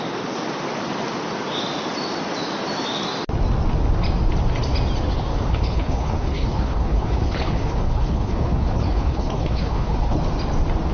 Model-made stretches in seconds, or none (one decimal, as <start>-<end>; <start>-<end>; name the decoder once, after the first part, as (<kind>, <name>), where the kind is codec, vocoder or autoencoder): 5.3-10.2 (codec, HILCodec)